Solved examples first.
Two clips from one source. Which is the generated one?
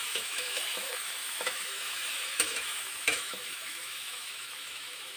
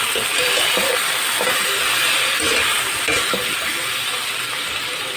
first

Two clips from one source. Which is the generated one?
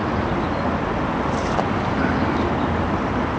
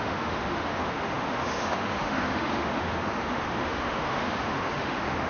second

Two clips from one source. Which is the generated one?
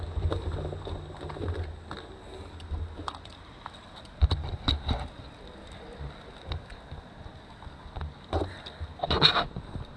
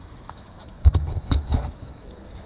second